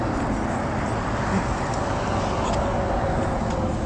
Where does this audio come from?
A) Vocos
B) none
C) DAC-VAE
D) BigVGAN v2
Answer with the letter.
B